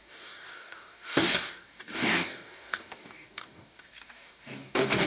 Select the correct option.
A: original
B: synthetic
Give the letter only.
B